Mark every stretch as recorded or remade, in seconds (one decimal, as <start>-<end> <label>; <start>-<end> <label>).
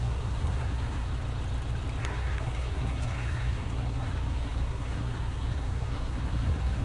0.0-1.1 remade; 1.1-2.0 recorded; 2.0-6.8 remade